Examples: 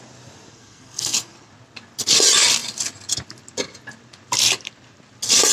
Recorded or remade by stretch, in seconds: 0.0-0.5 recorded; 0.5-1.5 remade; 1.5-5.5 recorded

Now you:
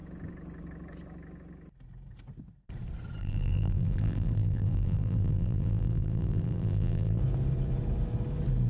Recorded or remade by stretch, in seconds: 0.0-3.2 recorded; 3.2-7.2 remade; 7.2-8.7 recorded